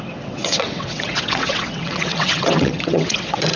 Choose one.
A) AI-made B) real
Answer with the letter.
A